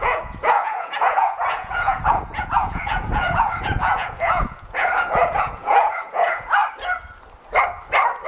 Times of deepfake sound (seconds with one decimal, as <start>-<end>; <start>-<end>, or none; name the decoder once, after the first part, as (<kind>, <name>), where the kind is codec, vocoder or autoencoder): 0.0-6.6 (vocoder, Vocos)